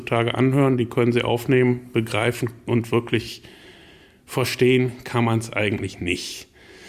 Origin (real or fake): real